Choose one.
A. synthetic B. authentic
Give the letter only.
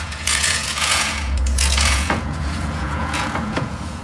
A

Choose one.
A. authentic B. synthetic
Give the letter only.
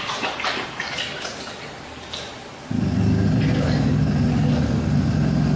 A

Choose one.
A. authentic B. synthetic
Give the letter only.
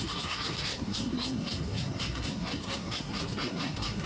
B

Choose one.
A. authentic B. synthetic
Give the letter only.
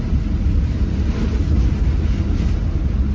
A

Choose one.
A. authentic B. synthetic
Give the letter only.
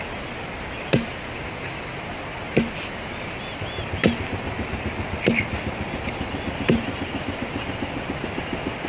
A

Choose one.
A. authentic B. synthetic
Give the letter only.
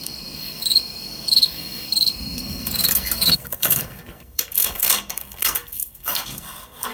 B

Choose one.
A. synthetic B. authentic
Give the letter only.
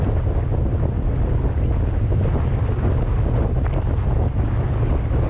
B